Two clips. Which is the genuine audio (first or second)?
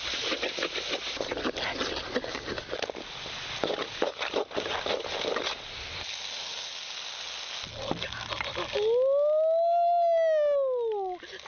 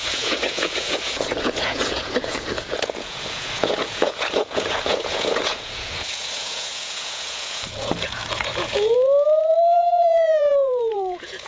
first